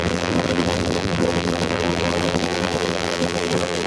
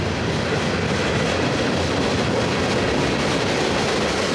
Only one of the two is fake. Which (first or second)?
first